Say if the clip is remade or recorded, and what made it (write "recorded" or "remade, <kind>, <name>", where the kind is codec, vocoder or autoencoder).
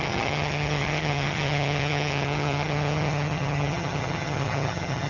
remade, vocoder, HiFi-GAN